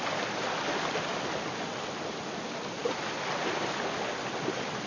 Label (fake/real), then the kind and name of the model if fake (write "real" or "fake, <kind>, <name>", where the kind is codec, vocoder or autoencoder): real